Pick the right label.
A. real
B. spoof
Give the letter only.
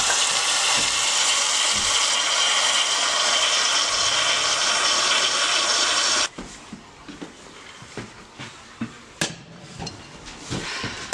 B